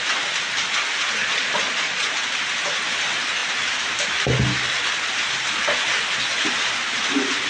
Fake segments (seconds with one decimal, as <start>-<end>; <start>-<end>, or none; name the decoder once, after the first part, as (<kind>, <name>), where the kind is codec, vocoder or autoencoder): 1.2-2.1 (vocoder, Vocos)